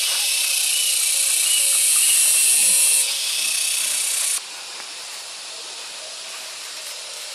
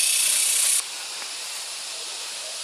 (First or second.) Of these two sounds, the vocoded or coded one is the second